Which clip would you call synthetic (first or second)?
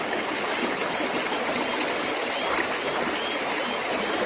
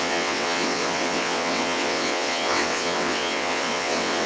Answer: second